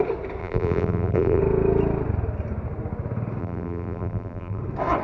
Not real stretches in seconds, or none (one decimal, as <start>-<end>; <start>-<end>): 0.4-1.4; 3.4-4.6